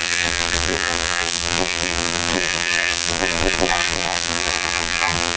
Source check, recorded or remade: remade